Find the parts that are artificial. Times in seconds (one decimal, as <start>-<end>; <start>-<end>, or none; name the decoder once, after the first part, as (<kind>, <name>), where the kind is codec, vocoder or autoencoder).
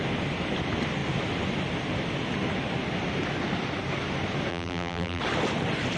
4.5-5.2 (vocoder, BigVGAN v2)